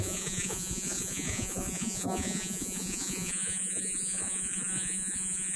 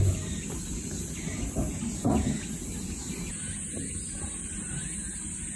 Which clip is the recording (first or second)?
second